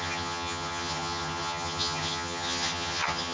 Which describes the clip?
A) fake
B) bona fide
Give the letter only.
A